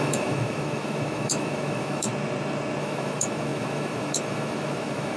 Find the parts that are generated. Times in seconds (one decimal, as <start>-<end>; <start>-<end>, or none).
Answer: 0.0-2.1; 2.8-5.2

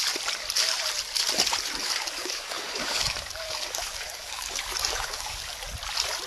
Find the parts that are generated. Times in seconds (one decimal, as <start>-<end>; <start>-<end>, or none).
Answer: 1.8-5.6

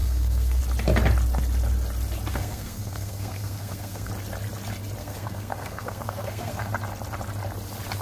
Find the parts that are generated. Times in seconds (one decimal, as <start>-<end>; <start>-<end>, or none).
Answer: 0.0-0.6; 2.3-4.1; 5.0-6.7